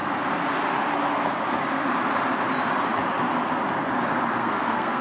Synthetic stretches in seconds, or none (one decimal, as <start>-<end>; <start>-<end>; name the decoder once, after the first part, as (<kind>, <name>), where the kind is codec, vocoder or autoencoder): 4.4-5.0 (codec, SNAC)